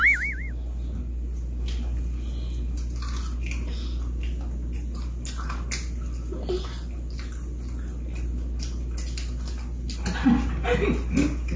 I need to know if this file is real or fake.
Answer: real